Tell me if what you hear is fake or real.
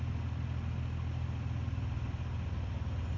real